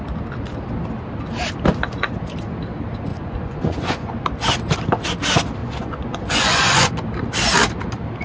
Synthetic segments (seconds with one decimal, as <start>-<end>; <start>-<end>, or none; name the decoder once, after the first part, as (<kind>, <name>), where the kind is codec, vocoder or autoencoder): 3.1-4.1 (vocoder, Vocos); 5.6-6.9